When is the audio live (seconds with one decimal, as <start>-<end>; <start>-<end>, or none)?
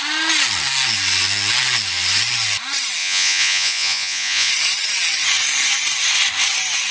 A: 0.0-3.0; 4.5-6.9